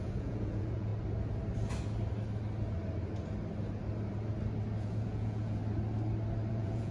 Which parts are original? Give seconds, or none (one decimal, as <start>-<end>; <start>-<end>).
0.9-4.8; 5.6-6.5